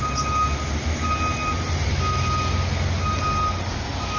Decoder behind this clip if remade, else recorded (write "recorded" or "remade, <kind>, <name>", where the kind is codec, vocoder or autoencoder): recorded